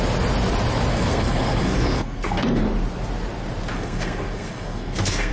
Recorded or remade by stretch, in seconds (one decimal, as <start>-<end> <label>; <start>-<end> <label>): 0.0-0.9 recorded; 0.9-2.6 remade; 2.6-3.7 recorded; 3.7-5.3 remade